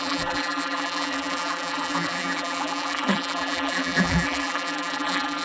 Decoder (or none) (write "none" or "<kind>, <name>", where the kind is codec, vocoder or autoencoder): vocoder, BigVGAN v2